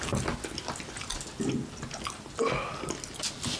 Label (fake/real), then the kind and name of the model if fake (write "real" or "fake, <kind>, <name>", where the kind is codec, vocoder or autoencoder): real